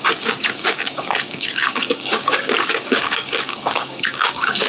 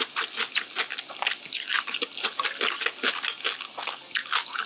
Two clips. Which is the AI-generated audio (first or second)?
first